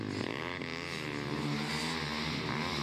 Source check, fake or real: real